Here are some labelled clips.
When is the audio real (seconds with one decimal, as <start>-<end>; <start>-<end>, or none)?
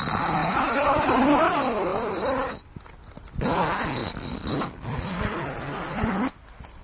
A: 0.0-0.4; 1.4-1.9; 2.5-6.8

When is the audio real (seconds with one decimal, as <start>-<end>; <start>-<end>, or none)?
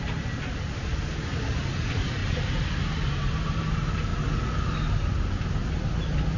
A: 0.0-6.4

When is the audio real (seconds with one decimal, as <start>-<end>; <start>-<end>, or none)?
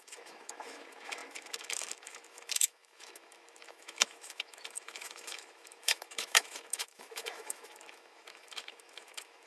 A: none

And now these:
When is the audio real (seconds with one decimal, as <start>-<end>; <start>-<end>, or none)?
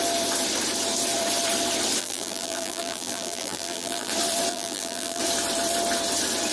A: 0.0-2.0; 4.1-4.5; 5.2-6.5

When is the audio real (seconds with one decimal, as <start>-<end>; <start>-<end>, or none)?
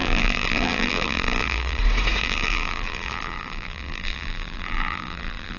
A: 1.8-2.2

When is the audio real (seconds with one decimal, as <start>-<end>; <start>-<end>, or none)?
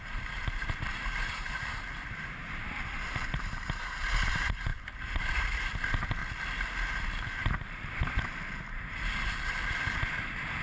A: 6.2-7.0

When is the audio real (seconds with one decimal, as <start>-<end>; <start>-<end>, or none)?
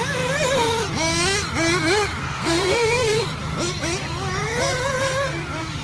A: 0.0-2.2; 3.2-5.8